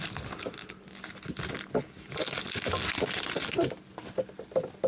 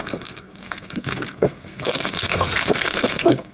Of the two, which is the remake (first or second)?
second